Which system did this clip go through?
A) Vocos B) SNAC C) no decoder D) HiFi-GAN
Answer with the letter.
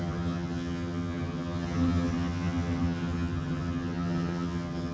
D